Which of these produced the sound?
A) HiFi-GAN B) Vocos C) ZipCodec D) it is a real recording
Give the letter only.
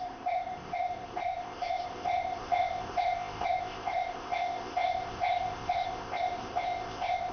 C